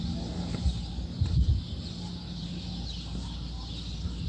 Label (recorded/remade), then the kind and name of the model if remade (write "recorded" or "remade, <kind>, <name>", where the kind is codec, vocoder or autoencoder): recorded